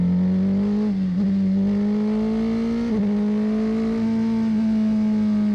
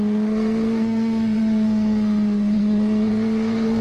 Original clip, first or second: first